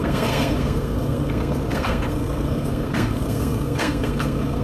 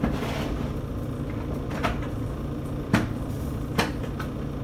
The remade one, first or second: first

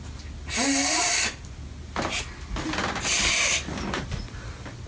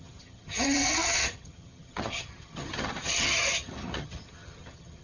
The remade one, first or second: second